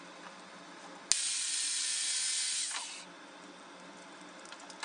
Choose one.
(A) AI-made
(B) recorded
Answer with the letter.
B